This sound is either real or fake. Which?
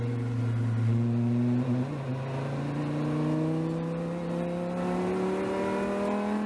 real